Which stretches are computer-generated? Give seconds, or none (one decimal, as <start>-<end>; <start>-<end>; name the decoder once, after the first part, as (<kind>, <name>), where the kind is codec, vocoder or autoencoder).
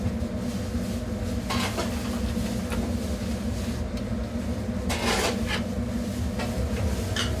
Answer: none